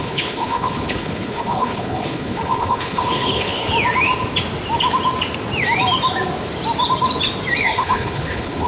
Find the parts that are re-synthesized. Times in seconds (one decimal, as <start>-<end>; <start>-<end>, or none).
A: 0.0-3.7; 7.6-8.7